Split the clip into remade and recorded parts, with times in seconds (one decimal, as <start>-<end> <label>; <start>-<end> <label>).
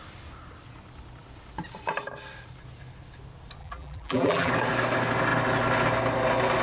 0.0-3.6 recorded; 3.6-4.5 remade; 4.5-6.6 recorded